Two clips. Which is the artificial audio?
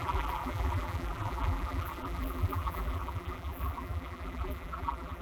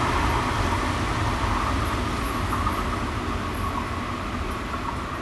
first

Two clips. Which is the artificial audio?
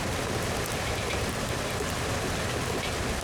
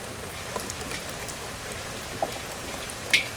first